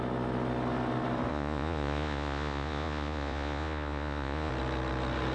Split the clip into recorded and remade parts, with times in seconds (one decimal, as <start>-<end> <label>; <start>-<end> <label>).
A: 0.0-1.3 recorded; 1.3-4.5 remade; 4.5-5.3 recorded

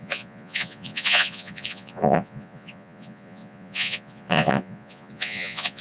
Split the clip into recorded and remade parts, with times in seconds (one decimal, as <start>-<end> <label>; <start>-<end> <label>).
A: 0.0-5.8 remade

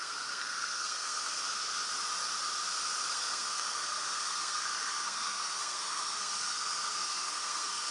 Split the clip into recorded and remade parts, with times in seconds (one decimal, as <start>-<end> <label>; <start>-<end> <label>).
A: 0.0-1.5 remade; 1.5-3.0 recorded; 3.0-7.9 remade

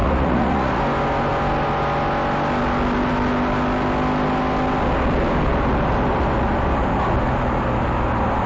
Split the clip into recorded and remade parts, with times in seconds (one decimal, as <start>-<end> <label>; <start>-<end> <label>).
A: 0.0-0.8 remade; 0.8-8.5 recorded

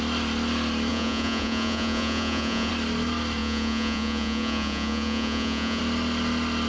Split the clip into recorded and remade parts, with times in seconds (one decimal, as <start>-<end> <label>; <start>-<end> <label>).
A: 0.0-0.9 recorded; 0.9-2.7 remade; 2.7-3.4 recorded; 3.4-5.8 remade; 5.8-6.7 recorded

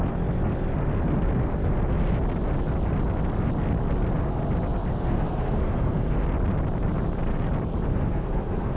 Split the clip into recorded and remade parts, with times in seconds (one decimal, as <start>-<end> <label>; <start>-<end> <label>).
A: 0.0-4.8 recorded; 4.8-6.2 remade; 6.2-7.9 recorded; 7.9-8.8 remade